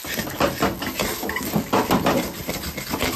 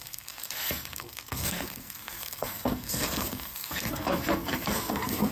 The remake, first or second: second